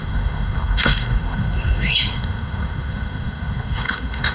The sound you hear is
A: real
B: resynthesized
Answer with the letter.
B